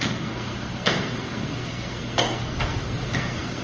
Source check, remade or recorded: remade